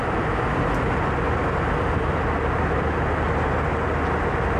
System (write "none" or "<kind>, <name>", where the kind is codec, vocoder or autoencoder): none